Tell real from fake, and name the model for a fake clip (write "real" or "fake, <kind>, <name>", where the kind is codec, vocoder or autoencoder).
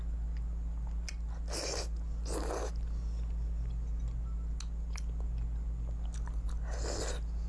real